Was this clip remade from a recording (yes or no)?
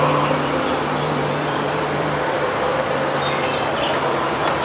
yes